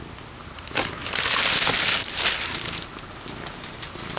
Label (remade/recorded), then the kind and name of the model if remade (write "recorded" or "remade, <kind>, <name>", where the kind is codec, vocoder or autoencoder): recorded